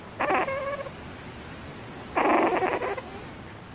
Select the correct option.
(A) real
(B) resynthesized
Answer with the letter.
A